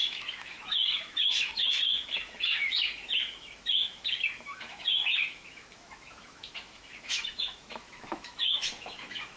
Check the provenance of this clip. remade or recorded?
remade